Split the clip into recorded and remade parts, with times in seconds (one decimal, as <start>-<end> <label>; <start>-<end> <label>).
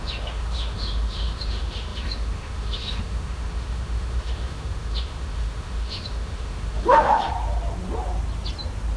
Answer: 0.0-7.3 remade; 7.3-9.0 recorded